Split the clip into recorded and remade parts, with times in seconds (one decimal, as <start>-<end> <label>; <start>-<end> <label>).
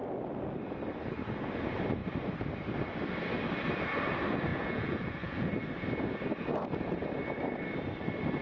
0.0-4.5 recorded; 4.5-5.5 remade; 5.5-8.4 recorded